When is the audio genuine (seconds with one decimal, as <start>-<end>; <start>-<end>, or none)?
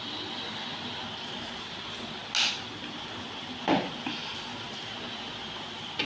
0.0-6.0